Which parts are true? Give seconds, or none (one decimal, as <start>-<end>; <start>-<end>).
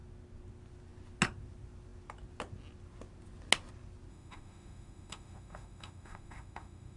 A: 0.0-4.1